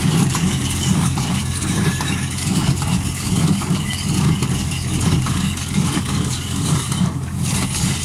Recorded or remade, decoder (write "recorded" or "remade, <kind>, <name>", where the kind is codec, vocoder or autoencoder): remade, codec, DAC